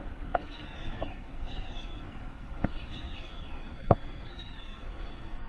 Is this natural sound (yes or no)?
no